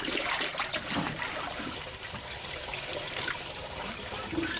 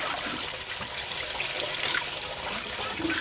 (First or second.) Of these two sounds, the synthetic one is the first